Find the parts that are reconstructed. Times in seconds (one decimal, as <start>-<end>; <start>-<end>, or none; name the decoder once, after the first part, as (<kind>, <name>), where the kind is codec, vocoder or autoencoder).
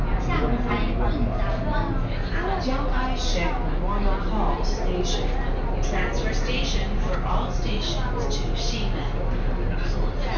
none